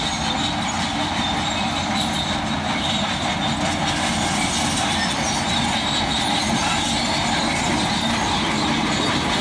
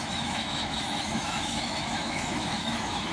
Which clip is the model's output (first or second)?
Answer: second